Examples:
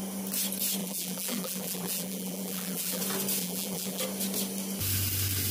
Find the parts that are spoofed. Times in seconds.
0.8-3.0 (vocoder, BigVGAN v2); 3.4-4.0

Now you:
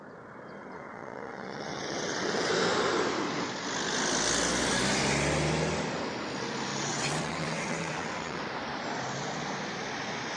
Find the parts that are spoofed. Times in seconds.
0.6-2.5 (vocoder, WaveNeXt); 6.7-8.4

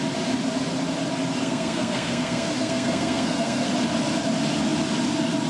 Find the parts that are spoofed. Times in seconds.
1.4-3.7 (codec, SNAC)

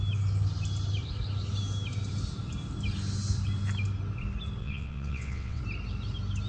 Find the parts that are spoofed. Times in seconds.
4.6-5.6 (vocoder, WaveNeXt)

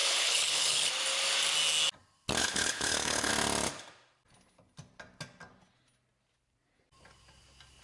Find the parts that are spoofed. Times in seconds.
0.0-0.9 (codec, HILCodec); 2.4-3.3

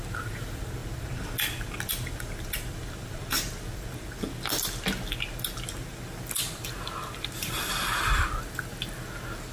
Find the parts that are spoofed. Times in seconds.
none

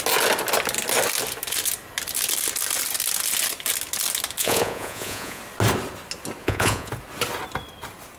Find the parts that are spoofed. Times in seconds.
4.4-5.4 (vocoder, Vocos); 6.4-6.9

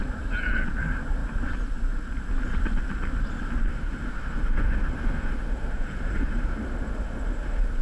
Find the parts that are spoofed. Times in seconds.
3.7-7.8 (autoencoder, DAC-VAE)